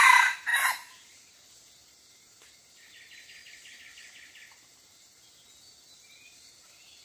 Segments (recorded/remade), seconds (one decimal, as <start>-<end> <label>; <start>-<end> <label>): 0.0-7.0 recorded